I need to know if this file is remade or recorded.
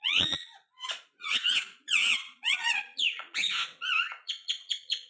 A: remade